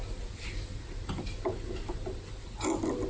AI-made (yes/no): no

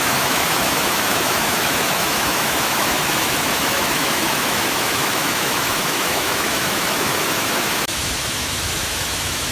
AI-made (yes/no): yes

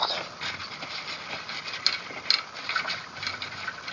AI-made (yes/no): no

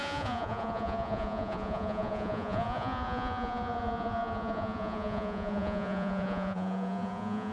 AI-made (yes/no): yes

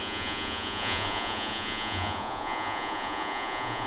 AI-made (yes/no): yes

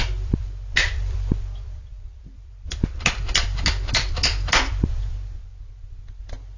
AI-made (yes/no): no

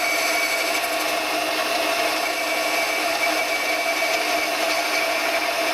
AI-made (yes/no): no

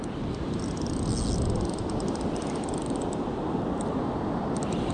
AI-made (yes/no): no